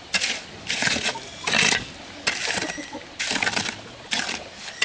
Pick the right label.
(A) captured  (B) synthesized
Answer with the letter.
A